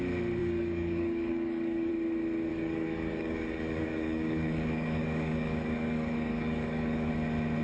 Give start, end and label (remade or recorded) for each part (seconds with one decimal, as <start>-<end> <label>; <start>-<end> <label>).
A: 0.0-0.4 recorded; 0.4-1.9 remade; 1.9-2.5 recorded; 2.5-7.1 remade; 7.1-7.6 recorded